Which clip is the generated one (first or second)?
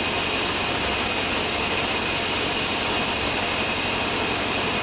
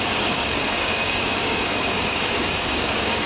second